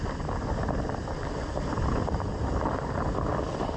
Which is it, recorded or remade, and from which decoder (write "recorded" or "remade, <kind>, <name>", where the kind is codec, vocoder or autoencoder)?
remade, vocoder, BigVGAN v2